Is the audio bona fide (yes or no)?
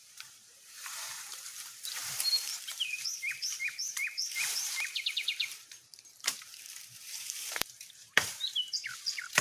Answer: no